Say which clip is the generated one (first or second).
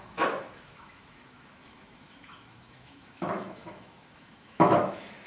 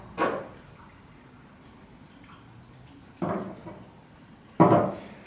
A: first